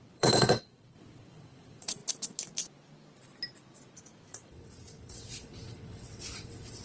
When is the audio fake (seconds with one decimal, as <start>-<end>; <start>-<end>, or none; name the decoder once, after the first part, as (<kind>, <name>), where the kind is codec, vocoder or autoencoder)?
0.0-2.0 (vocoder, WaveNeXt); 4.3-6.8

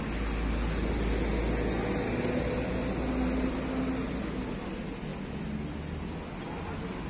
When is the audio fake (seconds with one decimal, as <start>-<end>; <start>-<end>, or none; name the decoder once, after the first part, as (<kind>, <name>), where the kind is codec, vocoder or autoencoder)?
none

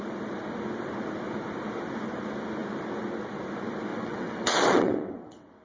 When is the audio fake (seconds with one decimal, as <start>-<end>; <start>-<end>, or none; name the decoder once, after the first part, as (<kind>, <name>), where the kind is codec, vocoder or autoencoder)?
3.9-5.6 (vocoder, WaveNeXt)